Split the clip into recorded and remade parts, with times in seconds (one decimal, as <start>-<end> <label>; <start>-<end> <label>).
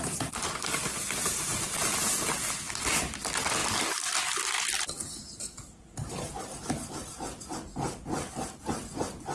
0.0-9.3 recorded